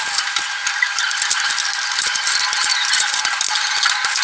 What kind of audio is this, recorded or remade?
recorded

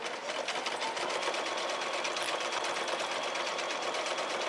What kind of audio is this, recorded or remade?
recorded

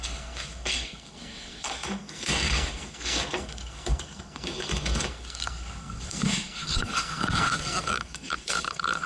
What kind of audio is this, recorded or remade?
remade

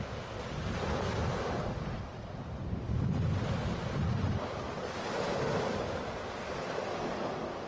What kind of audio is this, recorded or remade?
recorded